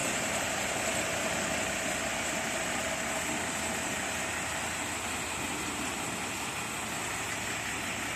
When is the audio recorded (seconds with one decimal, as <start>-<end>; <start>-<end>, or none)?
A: 0.5-8.2